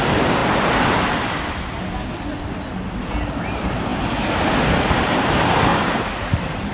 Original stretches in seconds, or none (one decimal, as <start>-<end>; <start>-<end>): 0.4-3.0; 3.9-4.8; 5.7-6.2

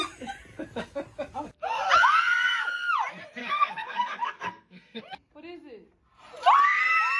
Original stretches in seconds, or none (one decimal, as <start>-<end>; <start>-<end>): 0.0-3.4; 5.0-7.2

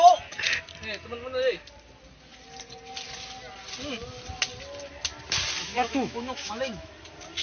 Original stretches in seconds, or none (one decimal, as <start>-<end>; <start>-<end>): 0.0-5.6; 6.9-7.4

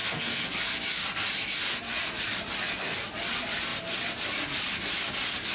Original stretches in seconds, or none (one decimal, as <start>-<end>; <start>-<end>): 0.6-5.5

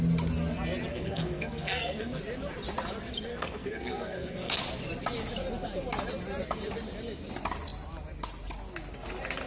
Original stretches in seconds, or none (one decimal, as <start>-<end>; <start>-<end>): 0.0-0.9; 2.2-3.3; 4.6-9.5

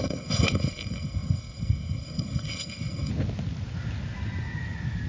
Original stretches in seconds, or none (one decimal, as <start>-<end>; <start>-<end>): 3.1-5.1